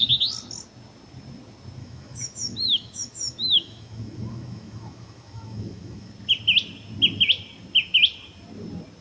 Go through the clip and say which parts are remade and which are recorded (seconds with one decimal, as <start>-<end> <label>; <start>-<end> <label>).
0.0-1.8 recorded; 1.8-6.1 remade; 6.1-9.0 recorded